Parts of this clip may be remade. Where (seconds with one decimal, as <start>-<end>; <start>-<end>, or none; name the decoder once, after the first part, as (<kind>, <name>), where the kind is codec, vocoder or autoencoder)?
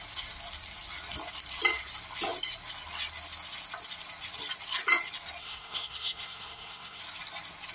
5.4-7.0 (codec, SNAC)